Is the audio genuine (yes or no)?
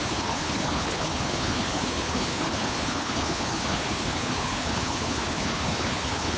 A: no